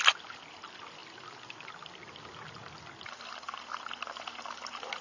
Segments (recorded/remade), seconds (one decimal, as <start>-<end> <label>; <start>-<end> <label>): 0.0-5.0 recorded